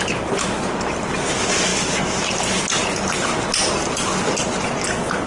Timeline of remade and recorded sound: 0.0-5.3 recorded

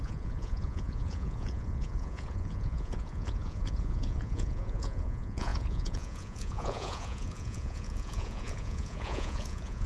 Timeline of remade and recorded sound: 0.0-9.9 remade

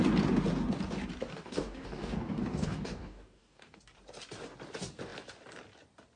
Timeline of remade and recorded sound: 0.0-1.3 recorded; 1.3-3.8 remade; 3.8-6.2 recorded

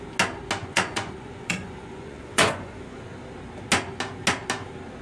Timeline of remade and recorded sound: 0.0-0.6 recorded; 0.6-3.0 remade; 3.0-5.0 recorded

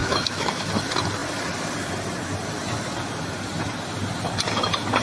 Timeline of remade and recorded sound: 0.0-0.7 remade; 0.7-5.0 recorded

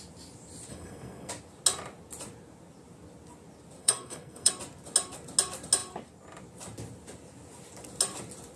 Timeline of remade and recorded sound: 0.0-0.7 recorded; 0.7-1.3 remade; 1.3-3.8 recorded; 3.8-4.5 remade; 4.5-8.6 recorded

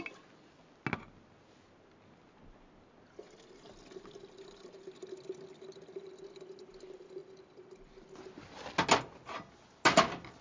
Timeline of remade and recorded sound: 0.0-10.4 recorded